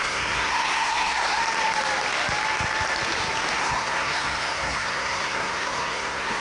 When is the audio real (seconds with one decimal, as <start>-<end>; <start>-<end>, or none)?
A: 1.4-3.6